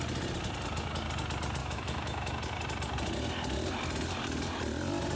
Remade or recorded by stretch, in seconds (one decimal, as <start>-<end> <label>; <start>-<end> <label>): 0.0-1.6 recorded; 1.6-2.3 remade; 2.3-5.2 recorded

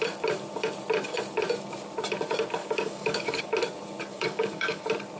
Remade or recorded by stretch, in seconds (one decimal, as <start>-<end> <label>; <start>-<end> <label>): 0.0-2.6 recorded; 2.6-3.4 remade; 3.4-4.1 recorded; 4.1-4.8 remade; 4.8-5.2 recorded